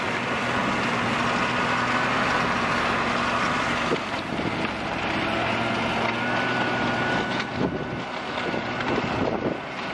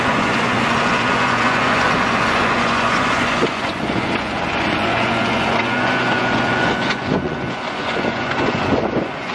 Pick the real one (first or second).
first